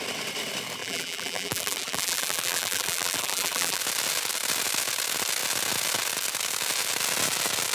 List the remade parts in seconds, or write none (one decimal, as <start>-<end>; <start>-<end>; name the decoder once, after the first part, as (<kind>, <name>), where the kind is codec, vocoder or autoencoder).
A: 0.8-3.8 (vocoder, BigVGAN v2)